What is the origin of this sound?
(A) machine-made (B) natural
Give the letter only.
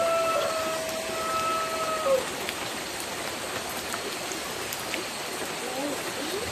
B